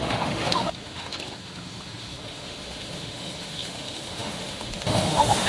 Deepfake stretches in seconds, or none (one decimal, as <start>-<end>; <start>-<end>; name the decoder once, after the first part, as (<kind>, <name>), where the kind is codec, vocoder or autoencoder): 0.0-5.5 (autoencoder, DAC-VAE)